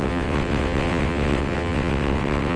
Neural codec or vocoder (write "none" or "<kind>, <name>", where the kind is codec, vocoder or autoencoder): vocoder, WaveNeXt